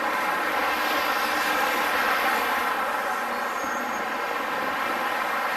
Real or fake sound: real